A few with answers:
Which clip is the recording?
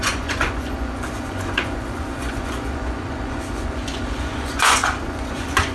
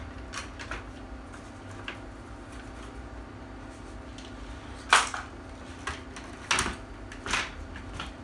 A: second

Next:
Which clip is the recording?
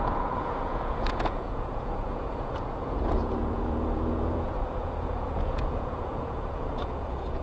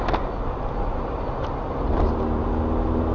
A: second